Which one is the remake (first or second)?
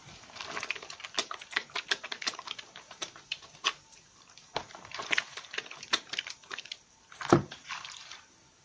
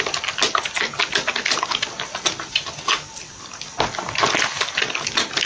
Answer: first